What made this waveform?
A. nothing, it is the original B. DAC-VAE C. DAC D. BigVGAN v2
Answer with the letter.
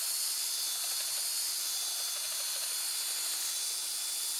A